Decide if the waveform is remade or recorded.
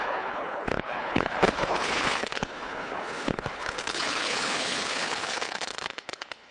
remade